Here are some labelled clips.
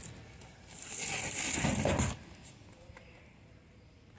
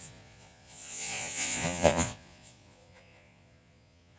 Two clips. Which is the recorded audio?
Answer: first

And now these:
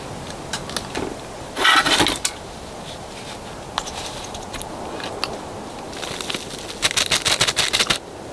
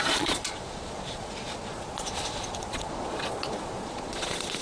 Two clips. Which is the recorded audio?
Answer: first